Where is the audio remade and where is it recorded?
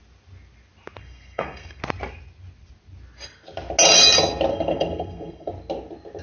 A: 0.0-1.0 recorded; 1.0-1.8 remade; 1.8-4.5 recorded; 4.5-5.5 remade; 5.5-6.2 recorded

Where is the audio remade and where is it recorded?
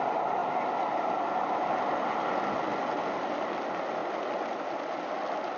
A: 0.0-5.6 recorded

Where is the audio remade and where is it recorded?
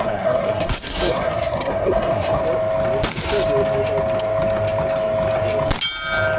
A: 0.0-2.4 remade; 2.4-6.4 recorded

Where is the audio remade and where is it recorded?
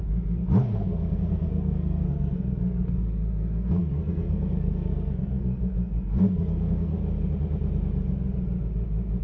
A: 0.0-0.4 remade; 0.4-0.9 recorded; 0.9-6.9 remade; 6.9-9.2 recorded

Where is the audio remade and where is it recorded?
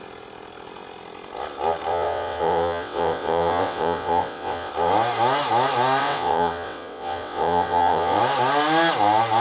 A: 0.0-1.9 recorded; 1.9-4.7 remade; 4.7-6.0 recorded; 6.0-8.2 remade; 8.2-9.4 recorded